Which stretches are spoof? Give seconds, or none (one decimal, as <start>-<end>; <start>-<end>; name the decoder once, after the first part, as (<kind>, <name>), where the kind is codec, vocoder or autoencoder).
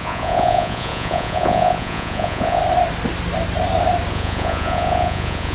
0.0-2.6 (vocoder, Vocos); 4.1-5.5